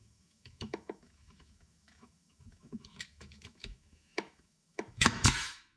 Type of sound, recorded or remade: remade